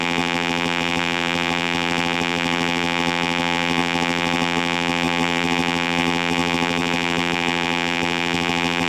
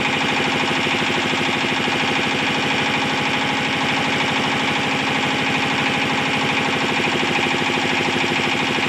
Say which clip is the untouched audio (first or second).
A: second